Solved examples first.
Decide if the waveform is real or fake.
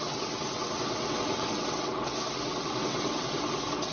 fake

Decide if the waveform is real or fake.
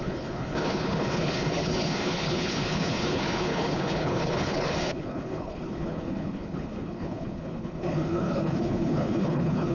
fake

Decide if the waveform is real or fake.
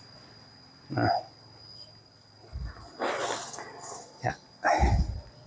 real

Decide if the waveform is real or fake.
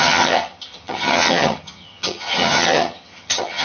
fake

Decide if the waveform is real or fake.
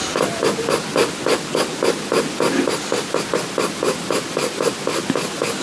real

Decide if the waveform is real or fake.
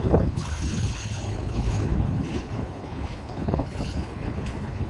fake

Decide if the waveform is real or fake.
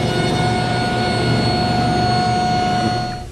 real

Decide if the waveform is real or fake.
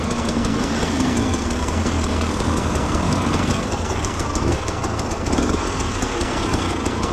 fake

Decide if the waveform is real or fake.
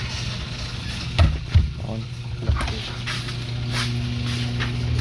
real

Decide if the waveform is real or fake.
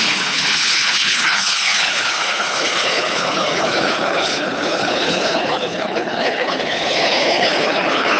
fake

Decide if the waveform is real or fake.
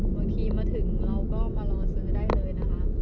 real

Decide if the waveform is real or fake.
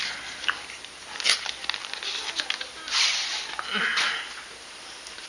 real